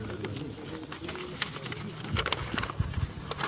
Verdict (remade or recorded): recorded